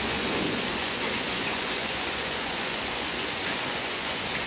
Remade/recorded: remade